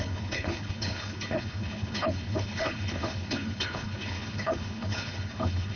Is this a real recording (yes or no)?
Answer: no